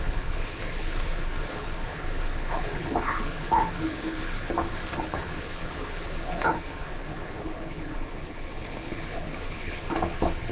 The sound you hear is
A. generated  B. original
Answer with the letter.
A